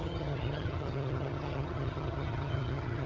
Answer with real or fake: fake